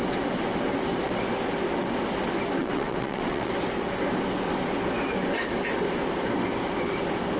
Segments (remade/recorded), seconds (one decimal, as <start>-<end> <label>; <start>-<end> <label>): 0.0-2.6 recorded; 2.6-3.5 remade; 3.5-7.4 recorded